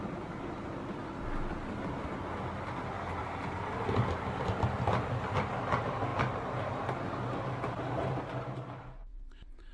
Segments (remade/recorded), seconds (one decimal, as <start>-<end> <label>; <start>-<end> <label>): 0.0-9.7 recorded